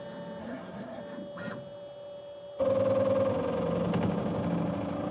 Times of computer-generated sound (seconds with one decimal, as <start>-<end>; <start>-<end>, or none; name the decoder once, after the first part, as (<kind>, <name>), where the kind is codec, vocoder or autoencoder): 0.4-1.0 (codec, SNAC)